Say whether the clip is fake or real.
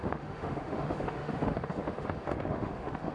fake